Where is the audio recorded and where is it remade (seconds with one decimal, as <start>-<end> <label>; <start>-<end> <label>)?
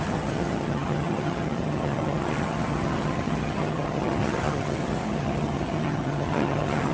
0.0-6.9 remade